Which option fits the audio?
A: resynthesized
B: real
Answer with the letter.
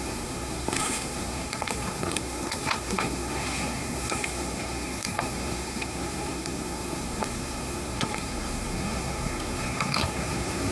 A